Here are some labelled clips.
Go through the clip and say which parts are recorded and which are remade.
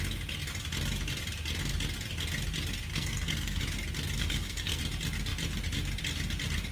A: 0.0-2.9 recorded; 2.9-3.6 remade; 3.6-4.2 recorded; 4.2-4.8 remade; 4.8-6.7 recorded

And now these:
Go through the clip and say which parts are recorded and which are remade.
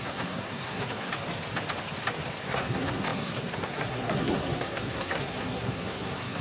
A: 0.0-1.1 remade; 1.1-2.4 recorded; 2.4-6.4 remade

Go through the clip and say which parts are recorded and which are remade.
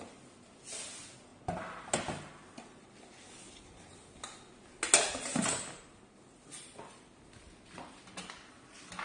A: 0.0-9.0 recorded